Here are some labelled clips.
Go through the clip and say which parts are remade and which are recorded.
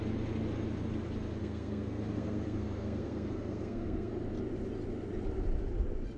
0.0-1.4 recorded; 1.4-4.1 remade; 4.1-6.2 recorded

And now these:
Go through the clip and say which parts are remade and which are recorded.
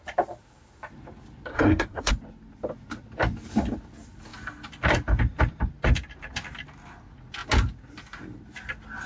0.0-1.5 recorded; 1.5-2.1 remade; 2.1-9.1 recorded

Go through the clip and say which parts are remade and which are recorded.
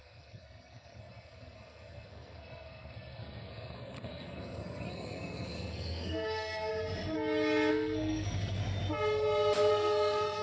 0.0-6.7 remade; 6.7-7.7 recorded; 7.7-8.6 remade; 8.6-9.7 recorded; 9.7-10.4 remade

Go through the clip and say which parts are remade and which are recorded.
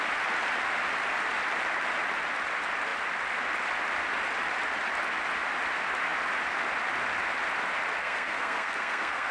0.0-8.0 recorded; 8.0-9.3 remade